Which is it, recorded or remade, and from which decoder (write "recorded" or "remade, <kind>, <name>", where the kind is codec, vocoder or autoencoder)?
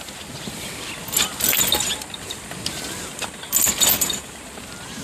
recorded